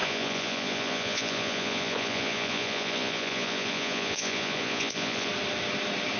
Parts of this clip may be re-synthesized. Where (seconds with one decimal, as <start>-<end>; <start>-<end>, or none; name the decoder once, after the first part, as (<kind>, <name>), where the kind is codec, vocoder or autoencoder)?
0.0-5.3 (vocoder, Vocos)